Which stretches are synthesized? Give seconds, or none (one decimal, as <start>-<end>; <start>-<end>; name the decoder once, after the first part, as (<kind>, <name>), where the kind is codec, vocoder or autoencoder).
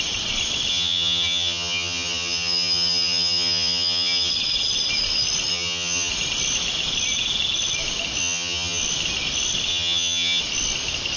0.7-4.3 (vocoder, HiFi-GAN); 5.5-6.1; 8.2-8.8; 9.7-10.4